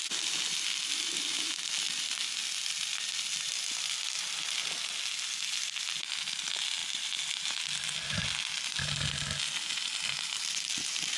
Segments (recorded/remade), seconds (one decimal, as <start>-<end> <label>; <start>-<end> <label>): 0.0-11.2 recorded